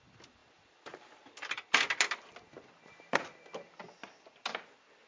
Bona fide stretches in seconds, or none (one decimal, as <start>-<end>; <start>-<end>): 0.0-5.1